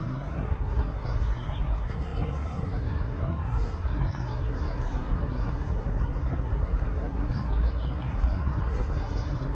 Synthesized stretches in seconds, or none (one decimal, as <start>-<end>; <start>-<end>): 0.0-9.5